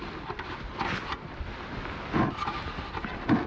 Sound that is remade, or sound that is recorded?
recorded